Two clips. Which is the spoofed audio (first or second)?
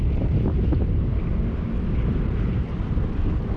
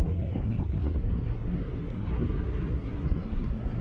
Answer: second